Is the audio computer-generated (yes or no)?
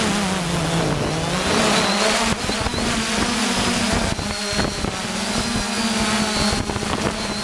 no